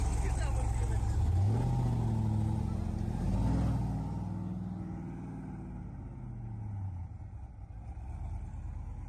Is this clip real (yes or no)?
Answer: yes